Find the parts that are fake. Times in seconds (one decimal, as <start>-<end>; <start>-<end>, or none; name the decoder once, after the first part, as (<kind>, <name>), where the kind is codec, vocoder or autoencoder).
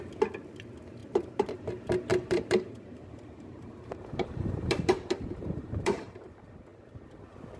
1.0-1.7 (vocoder, BigVGAN v2); 2.1-6.3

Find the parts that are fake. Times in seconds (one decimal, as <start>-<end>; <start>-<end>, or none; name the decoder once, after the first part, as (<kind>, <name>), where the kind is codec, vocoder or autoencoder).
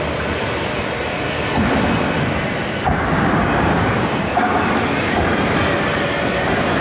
3.4-4.3 (codec, DAC)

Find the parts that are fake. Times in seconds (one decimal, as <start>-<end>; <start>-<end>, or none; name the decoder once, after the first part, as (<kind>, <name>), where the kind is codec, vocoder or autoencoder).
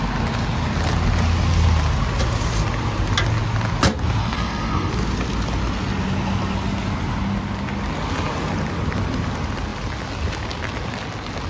4.2-4.9 (codec, SNAC)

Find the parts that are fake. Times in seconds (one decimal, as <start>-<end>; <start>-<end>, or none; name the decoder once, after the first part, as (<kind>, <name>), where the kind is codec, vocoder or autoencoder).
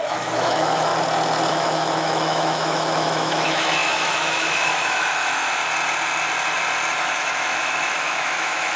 0.0-0.9 (autoencoder, DAC-VAE); 1.5-5.6; 7.0-8.8